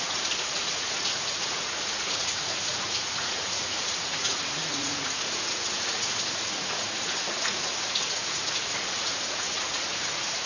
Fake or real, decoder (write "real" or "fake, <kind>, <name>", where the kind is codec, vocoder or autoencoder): fake, vocoder, Vocos